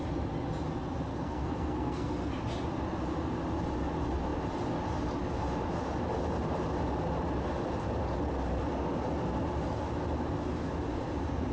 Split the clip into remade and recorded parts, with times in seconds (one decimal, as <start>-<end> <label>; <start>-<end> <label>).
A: 0.0-1.1 recorded; 1.1-2.3 remade; 2.3-11.5 recorded